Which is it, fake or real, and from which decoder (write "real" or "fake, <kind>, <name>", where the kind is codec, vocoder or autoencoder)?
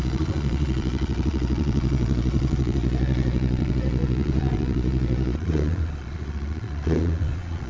fake, vocoder, Vocos